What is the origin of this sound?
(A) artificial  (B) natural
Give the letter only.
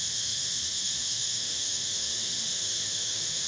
A